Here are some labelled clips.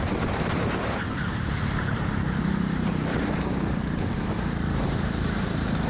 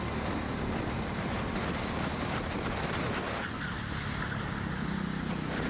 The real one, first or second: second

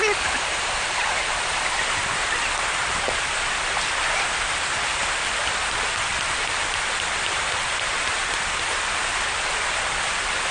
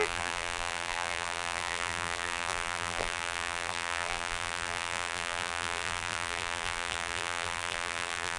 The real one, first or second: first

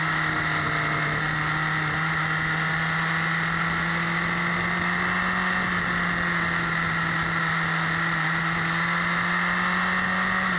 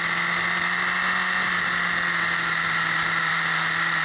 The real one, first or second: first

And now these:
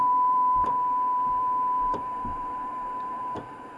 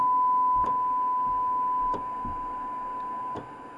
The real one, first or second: second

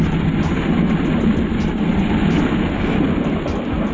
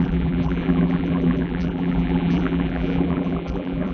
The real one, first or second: first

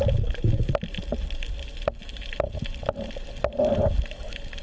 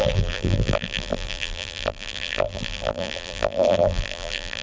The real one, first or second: first